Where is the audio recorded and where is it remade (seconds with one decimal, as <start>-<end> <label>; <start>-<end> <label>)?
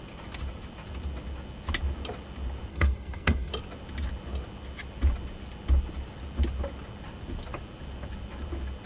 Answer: 0.0-2.7 recorded; 2.7-3.5 remade; 3.5-8.9 recorded